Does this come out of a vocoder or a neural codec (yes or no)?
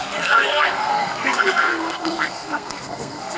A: yes